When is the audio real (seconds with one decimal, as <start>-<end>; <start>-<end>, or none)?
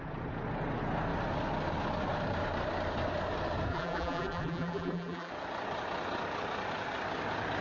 0.0-3.7; 5.3-7.6